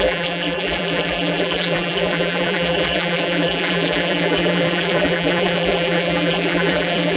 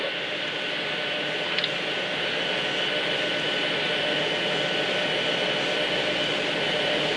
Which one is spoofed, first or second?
first